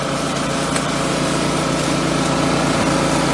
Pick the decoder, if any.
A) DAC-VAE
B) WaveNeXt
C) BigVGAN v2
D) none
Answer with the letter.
C